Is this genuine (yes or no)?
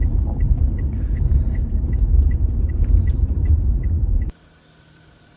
no